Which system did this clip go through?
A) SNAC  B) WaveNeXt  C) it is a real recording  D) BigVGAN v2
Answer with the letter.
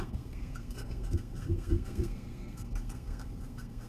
A